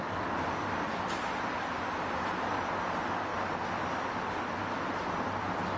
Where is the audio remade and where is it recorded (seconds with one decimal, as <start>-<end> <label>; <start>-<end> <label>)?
0.0-5.8 recorded